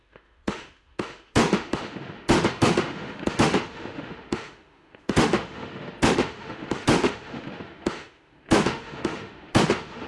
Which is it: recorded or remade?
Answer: remade